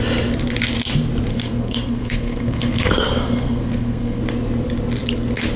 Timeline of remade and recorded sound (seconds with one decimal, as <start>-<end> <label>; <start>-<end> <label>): 0.0-1.3 recorded; 1.3-4.2 remade; 4.2-5.6 recorded